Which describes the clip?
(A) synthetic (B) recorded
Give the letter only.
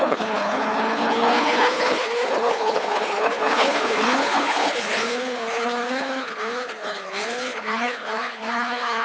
A